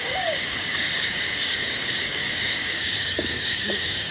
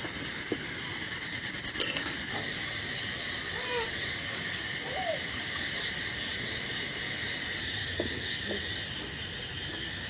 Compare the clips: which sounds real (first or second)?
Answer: second